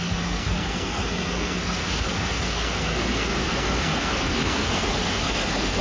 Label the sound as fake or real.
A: fake